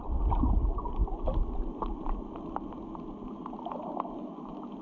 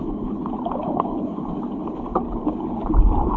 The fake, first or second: second